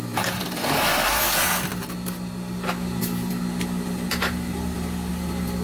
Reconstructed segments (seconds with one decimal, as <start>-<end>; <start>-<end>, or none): none